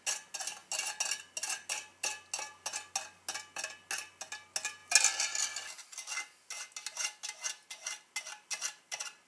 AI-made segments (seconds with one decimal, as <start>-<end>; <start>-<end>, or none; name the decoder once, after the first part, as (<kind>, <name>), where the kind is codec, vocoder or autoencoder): none